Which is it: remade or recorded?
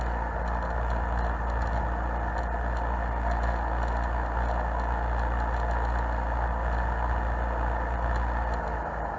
recorded